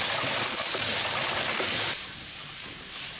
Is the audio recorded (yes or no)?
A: no